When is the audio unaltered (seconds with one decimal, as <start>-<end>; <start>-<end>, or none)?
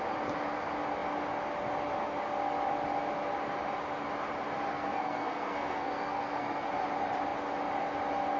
0.0-4.7; 6.7-8.4